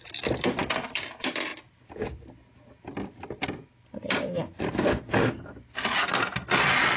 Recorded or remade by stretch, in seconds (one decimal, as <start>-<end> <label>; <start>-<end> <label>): 0.0-1.5 remade; 1.5-5.7 recorded; 5.7-7.0 remade